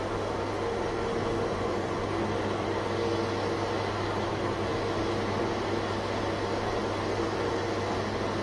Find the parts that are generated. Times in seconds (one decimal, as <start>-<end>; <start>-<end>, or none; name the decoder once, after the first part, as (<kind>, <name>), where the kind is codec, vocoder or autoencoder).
1.5-2.0 (vocoder, Vocos)